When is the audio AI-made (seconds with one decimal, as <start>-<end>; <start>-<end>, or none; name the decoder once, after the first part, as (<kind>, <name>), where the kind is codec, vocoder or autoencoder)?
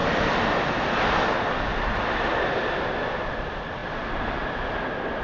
0.0-0.8 (vocoder, BigVGAN v2); 1.7-2.9